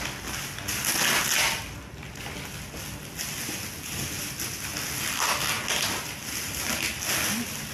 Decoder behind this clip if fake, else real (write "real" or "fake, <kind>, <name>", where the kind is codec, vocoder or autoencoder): real